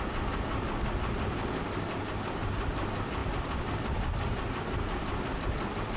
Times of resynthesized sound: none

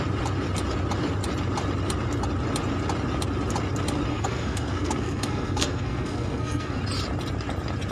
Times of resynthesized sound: 4.1-6.8 (codec, SNAC)

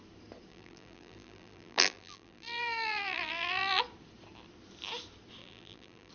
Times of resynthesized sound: 0.5-3.8 (vocoder, BigVGAN v2); 5.4-6.1